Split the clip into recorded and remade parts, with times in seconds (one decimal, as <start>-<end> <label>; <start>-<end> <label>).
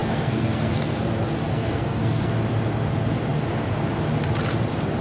0.0-1.0 remade; 1.0-1.5 recorded; 1.5-2.3 remade; 2.3-5.0 recorded